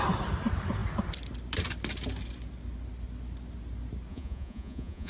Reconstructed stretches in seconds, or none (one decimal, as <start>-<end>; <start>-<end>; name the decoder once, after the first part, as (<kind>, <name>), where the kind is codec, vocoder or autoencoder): 4.1-5.1 (vocoder, Vocos)